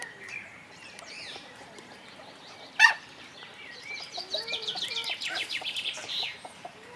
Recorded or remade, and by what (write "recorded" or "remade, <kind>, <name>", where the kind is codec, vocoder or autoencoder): remade, vocoder, BigVGAN v2